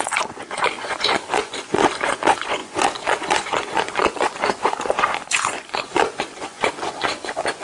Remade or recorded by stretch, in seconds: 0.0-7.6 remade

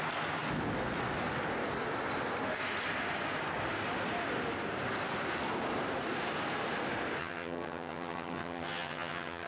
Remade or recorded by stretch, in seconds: 0.0-7.2 recorded; 7.2-9.5 remade

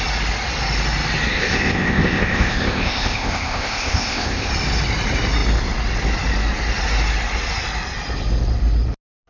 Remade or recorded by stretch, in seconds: 0.0-1.3 recorded; 1.3-4.5 remade; 4.5-9.3 recorded

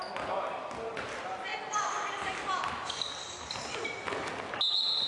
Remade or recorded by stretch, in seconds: 0.0-5.1 recorded

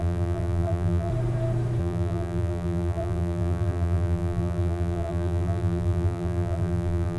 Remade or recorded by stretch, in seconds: 0.0-1.1 remade; 1.1-1.8 recorded; 1.8-7.2 remade